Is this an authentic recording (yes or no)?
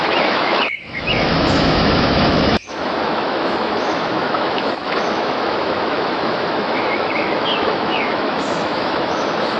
no